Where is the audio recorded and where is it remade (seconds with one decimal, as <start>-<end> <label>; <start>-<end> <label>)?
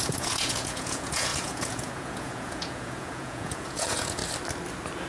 0.0-4.2 remade; 4.2-5.1 recorded